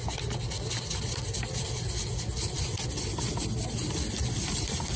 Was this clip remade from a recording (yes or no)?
no